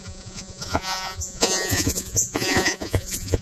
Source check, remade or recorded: remade